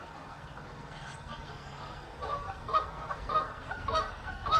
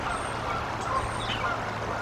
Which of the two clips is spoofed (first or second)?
first